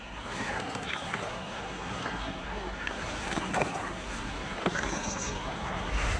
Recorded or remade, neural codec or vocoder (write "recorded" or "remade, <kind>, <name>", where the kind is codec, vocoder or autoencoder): remade, codec, SNAC